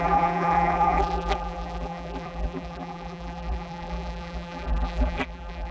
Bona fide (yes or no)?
no